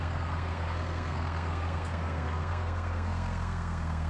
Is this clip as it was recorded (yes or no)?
no